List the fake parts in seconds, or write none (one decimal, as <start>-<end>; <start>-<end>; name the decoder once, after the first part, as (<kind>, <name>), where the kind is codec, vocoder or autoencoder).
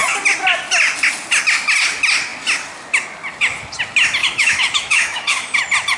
4.2-5.6 (autoencoder, DAC-VAE)